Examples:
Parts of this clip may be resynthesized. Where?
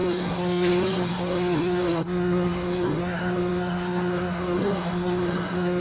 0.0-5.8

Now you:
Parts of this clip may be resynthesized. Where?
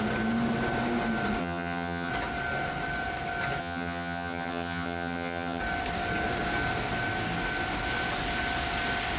1.4-2.1; 3.6-5.6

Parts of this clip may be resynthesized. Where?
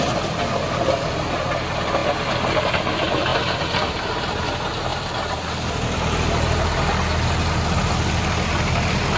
0.0-2.0; 2.7-4.9; 8.4-9.2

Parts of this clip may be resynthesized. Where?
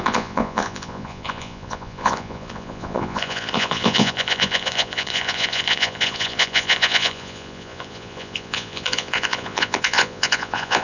0.0-10.8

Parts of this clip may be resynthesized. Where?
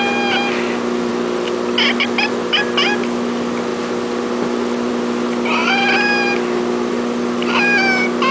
none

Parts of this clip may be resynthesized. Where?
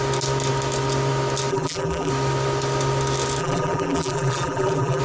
1.5-2.1; 3.4-5.0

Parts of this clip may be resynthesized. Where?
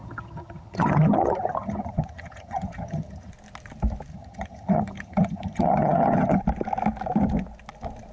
0.0-3.3; 4.1-6.4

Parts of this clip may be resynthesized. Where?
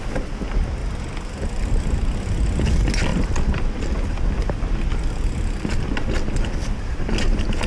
0.8-1.5